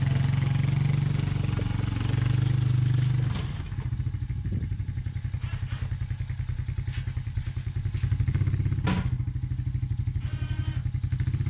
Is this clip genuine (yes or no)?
yes